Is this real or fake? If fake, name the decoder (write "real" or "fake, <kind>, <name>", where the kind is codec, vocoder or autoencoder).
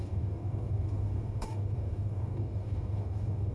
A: fake, codec, DAC